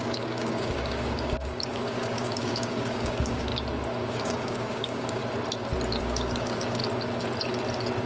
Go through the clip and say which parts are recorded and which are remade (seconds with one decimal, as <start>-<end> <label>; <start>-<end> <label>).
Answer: 0.0-3.5 remade; 3.5-4.1 recorded; 4.1-5.2 remade; 5.2-6.0 recorded; 6.0-6.8 remade; 6.8-8.1 recorded